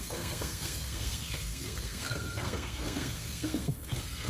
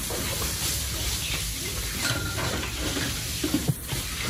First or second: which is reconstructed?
first